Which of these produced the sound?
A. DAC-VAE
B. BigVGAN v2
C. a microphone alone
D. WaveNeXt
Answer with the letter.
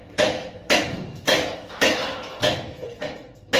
A